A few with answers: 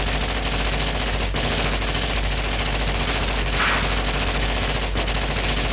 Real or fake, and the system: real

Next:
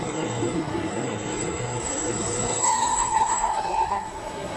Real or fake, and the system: fake, codec, SNAC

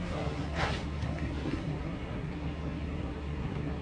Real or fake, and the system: fake, codec, SNAC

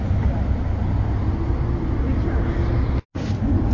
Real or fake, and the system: real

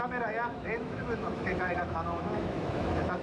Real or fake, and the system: fake, autoencoder, DAC-VAE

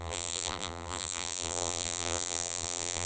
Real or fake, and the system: fake, vocoder, BigVGAN v2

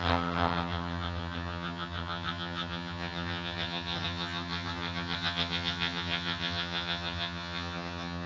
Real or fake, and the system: fake, vocoder, HiFi-GAN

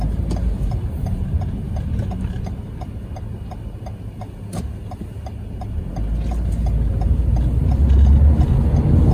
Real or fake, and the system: real